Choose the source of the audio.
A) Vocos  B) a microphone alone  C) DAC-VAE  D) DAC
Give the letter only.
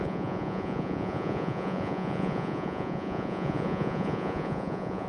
A